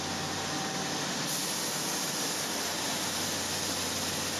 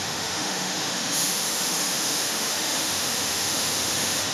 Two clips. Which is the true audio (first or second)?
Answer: first